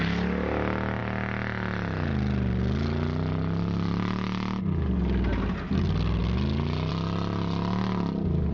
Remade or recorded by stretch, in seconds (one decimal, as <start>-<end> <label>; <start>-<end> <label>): 0.0-8.5 recorded